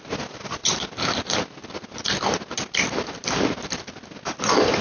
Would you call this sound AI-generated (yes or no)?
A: no